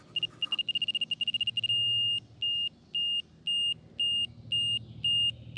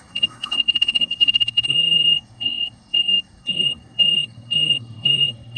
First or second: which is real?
first